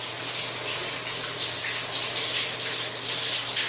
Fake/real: real